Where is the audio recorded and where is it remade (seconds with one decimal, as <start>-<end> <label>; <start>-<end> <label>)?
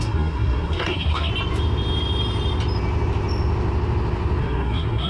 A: 0.0-1.3 remade; 1.3-4.4 recorded; 4.4-5.1 remade